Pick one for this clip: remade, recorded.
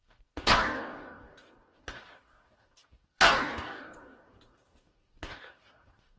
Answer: remade